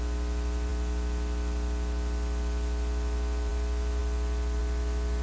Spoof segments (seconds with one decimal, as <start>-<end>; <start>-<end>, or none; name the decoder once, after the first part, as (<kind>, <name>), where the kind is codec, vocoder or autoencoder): none